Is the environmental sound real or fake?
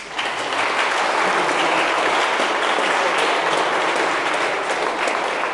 real